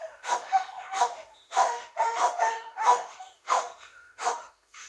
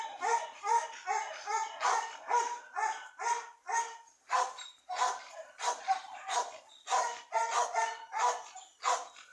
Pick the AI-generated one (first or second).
first